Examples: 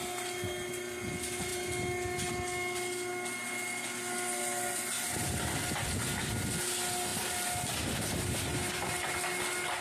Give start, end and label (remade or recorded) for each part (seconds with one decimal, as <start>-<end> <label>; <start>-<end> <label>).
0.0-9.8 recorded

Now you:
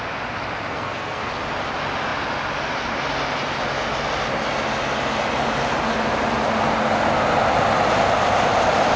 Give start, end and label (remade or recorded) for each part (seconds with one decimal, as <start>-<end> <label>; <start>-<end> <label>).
0.0-0.7 recorded; 0.7-1.3 remade; 1.3-9.0 recorded

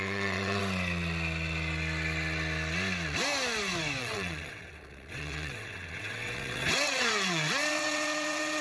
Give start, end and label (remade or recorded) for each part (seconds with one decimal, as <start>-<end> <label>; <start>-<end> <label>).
0.0-0.6 remade; 0.6-4.0 recorded; 4.0-8.6 remade